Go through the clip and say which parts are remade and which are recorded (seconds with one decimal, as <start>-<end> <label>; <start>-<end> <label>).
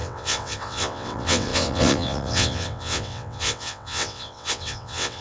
0.0-5.2 remade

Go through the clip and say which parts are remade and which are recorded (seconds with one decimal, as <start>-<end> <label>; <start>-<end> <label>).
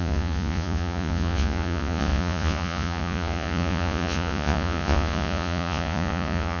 0.0-6.6 remade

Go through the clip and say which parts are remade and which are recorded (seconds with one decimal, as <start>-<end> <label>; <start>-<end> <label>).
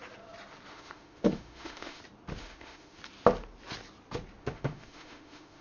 0.0-0.7 recorded; 0.7-2.0 remade; 2.0-2.4 recorded; 2.4-3.0 remade; 3.0-4.4 recorded; 4.4-5.6 remade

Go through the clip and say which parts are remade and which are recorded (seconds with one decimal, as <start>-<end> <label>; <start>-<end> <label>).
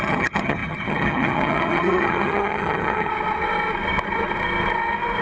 0.0-3.1 remade; 3.1-5.2 recorded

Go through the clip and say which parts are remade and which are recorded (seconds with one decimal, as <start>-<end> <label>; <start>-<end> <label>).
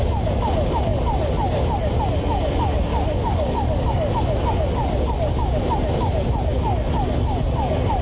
0.0-2.9 recorded; 2.9-4.1 remade; 4.1-8.0 recorded